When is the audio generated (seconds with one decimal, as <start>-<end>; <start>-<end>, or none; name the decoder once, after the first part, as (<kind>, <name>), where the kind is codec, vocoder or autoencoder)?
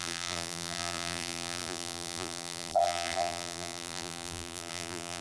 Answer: 0.0-5.2 (vocoder, BigVGAN v2)